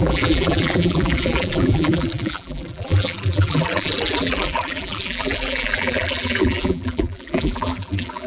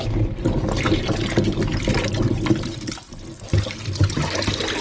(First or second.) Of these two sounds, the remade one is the first